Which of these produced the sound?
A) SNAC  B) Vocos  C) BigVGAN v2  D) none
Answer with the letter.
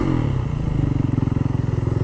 D